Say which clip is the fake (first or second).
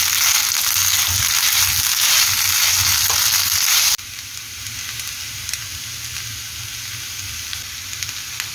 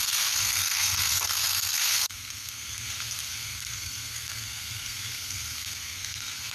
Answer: second